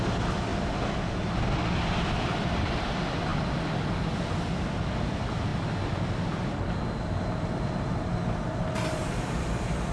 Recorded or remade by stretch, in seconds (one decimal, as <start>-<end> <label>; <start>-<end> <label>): 0.0-0.5 remade; 0.5-2.0 recorded; 2.0-3.3 remade; 3.3-4.6 recorded; 4.6-5.5 remade; 5.5-7.4 recorded; 7.4-9.9 remade